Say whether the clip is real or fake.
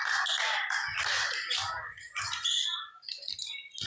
real